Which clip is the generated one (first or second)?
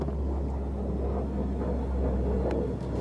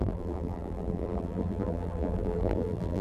second